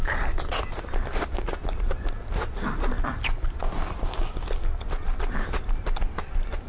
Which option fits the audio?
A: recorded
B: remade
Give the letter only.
A